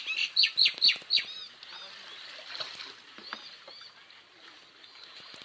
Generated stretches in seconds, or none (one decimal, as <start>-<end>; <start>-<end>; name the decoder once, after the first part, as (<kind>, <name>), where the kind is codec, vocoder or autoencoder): none